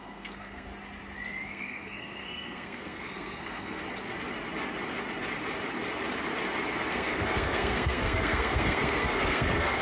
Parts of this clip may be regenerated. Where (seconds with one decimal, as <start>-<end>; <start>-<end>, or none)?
0.0-0.7; 1.5-3.8; 6.9-9.8

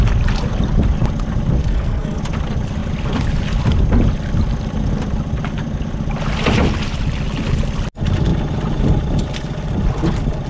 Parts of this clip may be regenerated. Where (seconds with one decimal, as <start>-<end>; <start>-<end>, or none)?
1.6-2.2

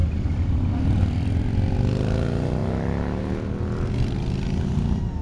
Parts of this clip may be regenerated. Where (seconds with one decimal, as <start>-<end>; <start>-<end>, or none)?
none